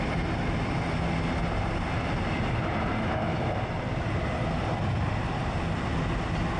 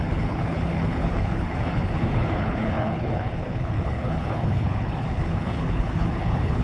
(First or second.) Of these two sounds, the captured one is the first